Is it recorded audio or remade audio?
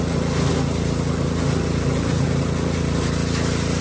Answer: recorded